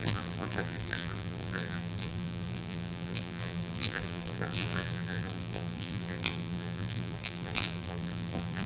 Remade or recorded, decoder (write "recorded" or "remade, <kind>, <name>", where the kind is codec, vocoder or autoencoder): remade, vocoder, BigVGAN v2